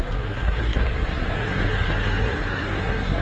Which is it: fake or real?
fake